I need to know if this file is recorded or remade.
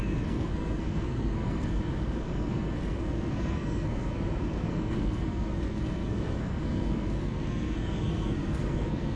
remade